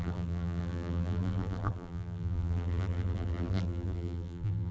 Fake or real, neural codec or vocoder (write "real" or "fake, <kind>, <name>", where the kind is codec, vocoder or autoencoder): fake, vocoder, BigVGAN v2